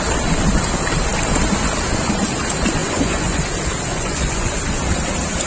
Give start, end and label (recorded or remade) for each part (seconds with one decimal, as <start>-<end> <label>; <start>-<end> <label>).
0.0-2.8 recorded; 2.8-3.4 remade; 3.4-3.9 recorded; 3.9-4.5 remade; 4.5-5.5 recorded